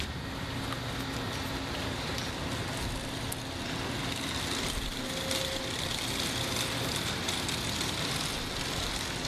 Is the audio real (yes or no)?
yes